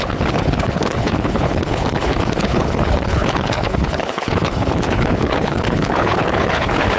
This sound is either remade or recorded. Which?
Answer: remade